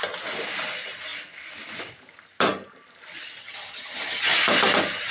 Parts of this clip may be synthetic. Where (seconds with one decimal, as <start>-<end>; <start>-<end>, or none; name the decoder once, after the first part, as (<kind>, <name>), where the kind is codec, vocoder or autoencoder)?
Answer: 3.4-4.3 (vocoder, HiFi-GAN)